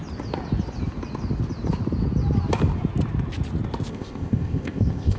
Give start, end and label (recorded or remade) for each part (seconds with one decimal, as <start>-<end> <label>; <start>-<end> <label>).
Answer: 0.0-3.9 recorded; 3.9-5.2 remade